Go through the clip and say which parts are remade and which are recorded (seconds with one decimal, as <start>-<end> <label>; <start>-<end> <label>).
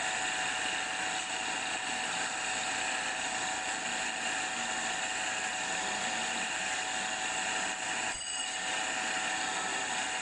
0.0-5.5 recorded; 5.5-6.8 remade; 6.8-10.2 recorded